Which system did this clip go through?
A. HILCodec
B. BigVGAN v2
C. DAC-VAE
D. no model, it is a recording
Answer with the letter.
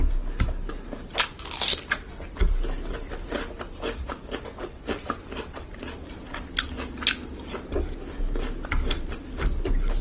D